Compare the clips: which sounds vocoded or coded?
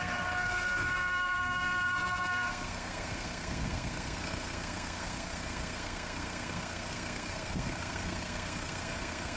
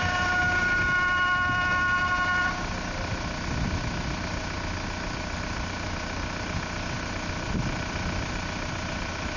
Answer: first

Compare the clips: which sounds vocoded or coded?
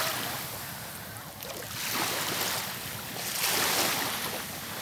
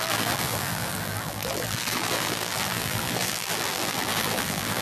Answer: second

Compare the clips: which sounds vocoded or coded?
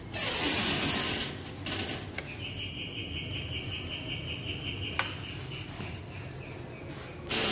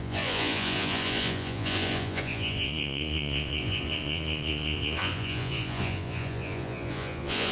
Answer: second